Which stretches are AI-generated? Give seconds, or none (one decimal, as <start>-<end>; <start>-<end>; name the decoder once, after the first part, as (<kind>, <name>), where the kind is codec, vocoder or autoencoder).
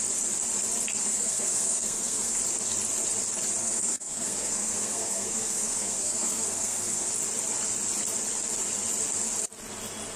1.0-2.4 (codec, SNAC); 3.6-7.1